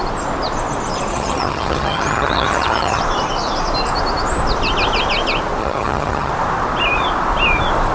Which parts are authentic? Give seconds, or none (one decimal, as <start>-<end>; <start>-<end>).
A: 0.0-1.1; 3.0-5.6; 6.3-7.9